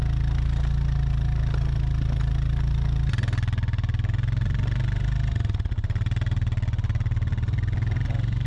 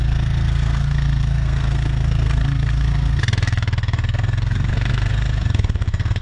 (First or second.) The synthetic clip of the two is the second